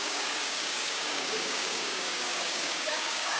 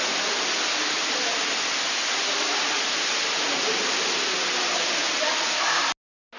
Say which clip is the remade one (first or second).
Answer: first